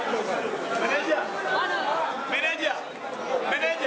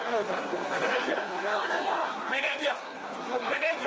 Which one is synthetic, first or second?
second